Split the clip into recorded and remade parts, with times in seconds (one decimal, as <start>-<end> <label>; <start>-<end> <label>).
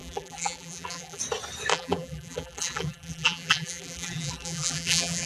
0.0-1.2 remade; 1.2-1.7 recorded; 1.7-5.3 remade